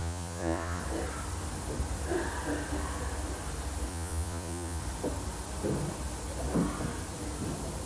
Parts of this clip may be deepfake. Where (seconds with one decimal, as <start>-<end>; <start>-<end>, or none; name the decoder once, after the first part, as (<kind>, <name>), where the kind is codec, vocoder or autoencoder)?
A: 0.0-0.8 (vocoder, Vocos); 3.9-4.8